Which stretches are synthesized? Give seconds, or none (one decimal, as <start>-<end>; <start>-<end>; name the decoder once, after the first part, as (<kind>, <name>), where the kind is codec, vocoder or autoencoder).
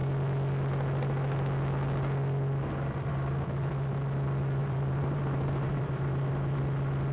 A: 4.6-6.6 (vocoder, BigVGAN v2)